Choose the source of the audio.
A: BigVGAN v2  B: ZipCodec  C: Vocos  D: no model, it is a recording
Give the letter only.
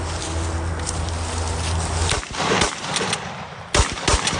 D